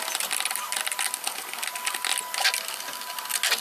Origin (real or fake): real